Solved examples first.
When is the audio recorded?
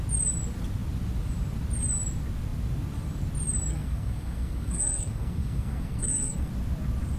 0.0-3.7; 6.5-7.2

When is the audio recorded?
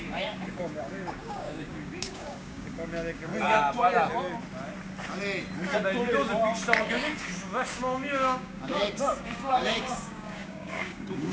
3.3-6.9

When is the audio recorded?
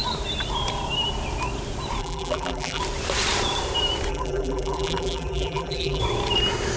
0.0-2.0; 2.8-4.1; 6.0-6.8